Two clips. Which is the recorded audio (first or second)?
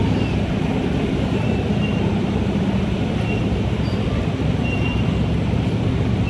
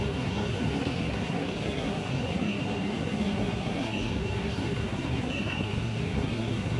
first